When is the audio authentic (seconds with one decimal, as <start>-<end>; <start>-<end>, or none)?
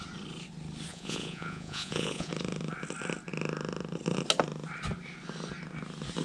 0.0-0.9; 2.3-6.2